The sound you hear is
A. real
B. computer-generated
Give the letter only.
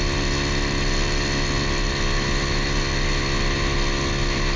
A